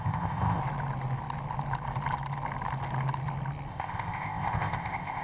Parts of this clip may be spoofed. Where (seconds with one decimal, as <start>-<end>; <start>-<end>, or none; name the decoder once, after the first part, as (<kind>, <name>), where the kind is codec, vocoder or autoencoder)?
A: 0.0-0.6 (codec, ZipCodec); 3.7-5.2